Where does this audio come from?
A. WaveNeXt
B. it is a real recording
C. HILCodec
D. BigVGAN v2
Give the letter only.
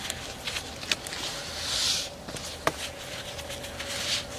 B